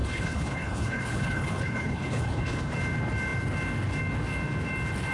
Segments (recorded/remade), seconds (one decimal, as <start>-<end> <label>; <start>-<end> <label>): 0.0-2.7 remade; 2.7-5.1 recorded